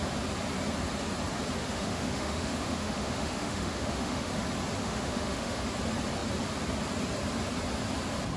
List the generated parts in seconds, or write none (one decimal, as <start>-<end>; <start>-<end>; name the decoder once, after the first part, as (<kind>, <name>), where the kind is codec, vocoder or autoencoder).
1.6-4.3 (autoencoder, DAC-VAE); 4.8-5.6